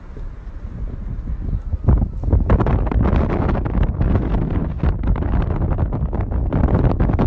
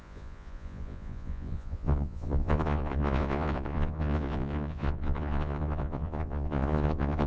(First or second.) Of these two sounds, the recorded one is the first